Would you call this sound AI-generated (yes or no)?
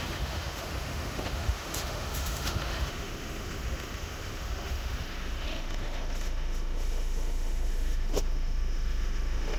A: yes